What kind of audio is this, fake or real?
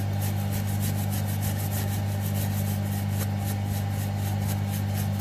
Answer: real